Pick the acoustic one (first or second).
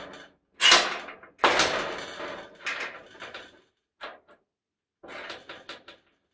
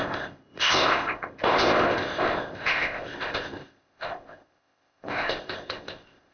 first